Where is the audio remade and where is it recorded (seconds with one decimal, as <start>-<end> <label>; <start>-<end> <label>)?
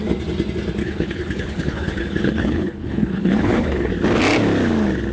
0.0-0.8 recorded; 0.8-3.9 remade; 3.9-5.1 recorded